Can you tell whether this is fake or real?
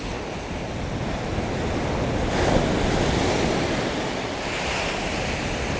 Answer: real